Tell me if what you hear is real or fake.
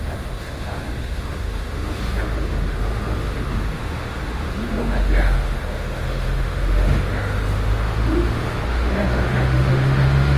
fake